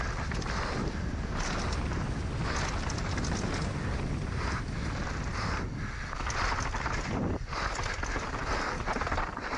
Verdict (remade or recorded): recorded